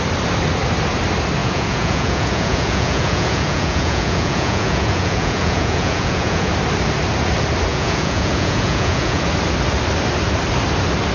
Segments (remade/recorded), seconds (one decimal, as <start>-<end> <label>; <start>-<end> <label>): 0.0-1.4 recorded; 1.4-6.5 remade; 6.5-7.7 recorded; 7.7-9.2 remade; 9.2-11.1 recorded

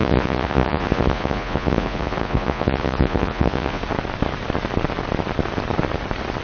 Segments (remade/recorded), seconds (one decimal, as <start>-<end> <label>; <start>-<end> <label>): 0.0-3.8 remade; 3.8-6.4 recorded